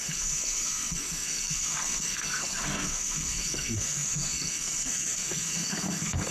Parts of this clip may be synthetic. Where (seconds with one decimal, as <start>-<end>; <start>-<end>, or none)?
0.0-6.3